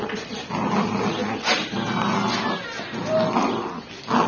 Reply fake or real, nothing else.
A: real